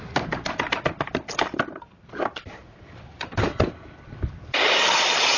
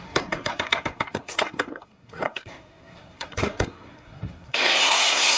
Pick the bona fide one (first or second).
first